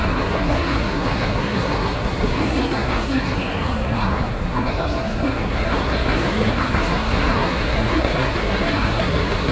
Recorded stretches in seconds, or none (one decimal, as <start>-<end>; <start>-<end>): none